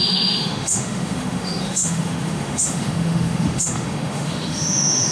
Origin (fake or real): fake